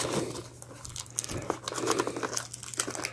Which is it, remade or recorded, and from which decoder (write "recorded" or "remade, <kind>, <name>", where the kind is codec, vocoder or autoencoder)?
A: recorded